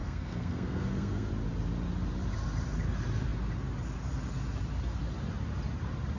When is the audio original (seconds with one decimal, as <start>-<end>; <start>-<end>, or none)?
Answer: 1.3-6.2